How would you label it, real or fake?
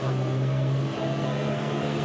fake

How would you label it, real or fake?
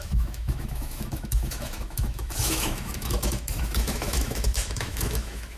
fake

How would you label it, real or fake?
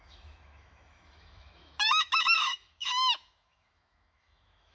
fake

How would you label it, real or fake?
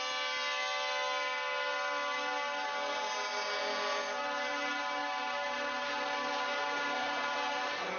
real